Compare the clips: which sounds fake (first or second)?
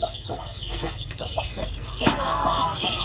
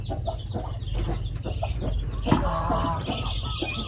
first